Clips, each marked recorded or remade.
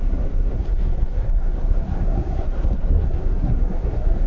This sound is remade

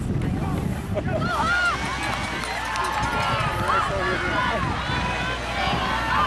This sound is recorded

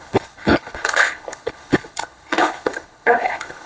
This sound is remade